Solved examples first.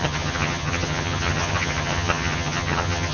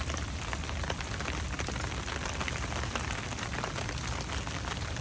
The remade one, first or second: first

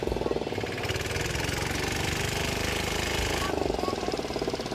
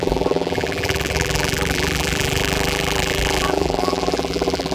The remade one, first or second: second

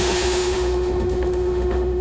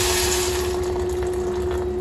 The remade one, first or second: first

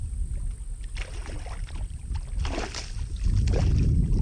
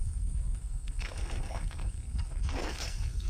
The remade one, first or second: second